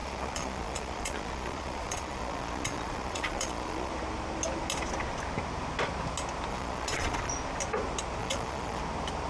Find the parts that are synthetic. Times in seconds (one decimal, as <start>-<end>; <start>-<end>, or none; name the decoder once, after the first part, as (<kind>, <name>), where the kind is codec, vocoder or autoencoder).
0.0-3.9 (vocoder, Vocos); 6.5-7.3; 8.2-8.8